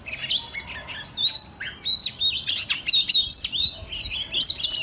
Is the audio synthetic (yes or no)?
no